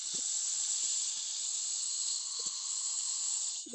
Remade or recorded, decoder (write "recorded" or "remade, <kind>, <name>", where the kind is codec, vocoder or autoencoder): recorded